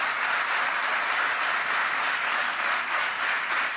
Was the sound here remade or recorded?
recorded